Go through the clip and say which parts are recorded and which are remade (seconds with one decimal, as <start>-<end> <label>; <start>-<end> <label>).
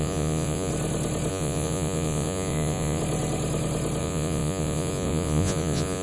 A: 0.0-0.7 remade; 0.7-1.3 recorded; 1.3-3.0 remade; 3.0-4.0 recorded; 4.0-6.0 remade